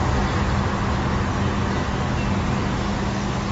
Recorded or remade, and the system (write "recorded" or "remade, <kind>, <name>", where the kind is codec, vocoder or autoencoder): recorded